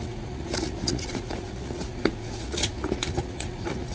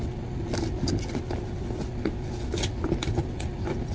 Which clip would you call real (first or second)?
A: second